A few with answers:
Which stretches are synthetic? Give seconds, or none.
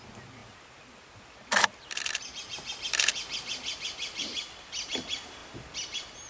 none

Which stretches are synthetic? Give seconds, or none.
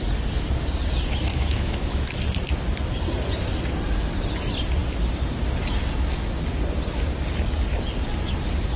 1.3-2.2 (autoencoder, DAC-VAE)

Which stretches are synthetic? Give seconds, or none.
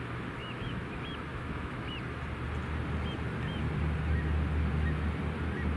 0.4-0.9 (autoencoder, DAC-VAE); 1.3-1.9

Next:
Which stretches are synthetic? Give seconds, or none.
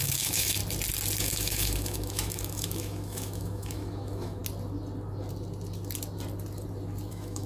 0.0-0.6 (autoencoder, DAC-VAE); 1.2-4.4; 7.1-7.5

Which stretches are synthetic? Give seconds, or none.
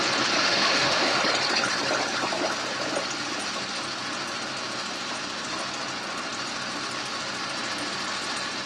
0.4-1.2 (autoencoder, DAC-VAE)